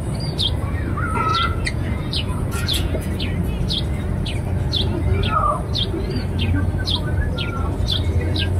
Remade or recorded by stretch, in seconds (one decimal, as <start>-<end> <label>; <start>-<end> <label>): 0.0-1.3 recorded; 1.3-3.1 remade; 3.1-8.6 recorded